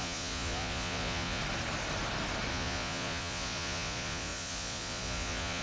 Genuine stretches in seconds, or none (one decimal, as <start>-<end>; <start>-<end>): 1.4-2.5